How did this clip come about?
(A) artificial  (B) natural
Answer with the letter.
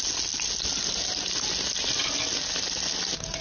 B